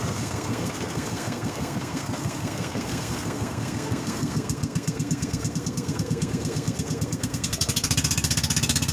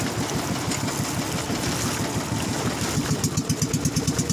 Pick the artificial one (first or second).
first